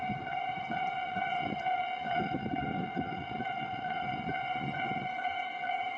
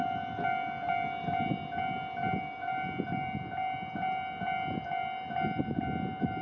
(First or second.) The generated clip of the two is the first